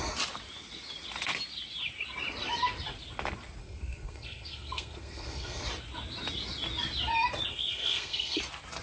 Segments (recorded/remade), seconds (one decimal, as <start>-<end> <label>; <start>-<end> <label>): 0.0-3.6 recorded; 3.6-5.6 remade; 5.6-7.5 recorded; 7.5-8.4 remade; 8.4-8.8 recorded